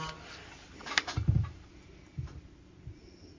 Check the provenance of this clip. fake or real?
real